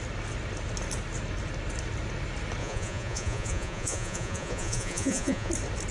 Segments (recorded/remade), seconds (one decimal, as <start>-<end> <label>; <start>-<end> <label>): 0.0-2.6 recorded; 2.6-5.5 remade; 5.5-5.9 recorded